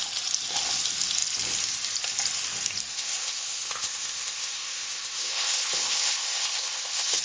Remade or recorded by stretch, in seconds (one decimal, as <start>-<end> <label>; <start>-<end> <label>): 0.0-2.9 recorded; 2.9-7.2 remade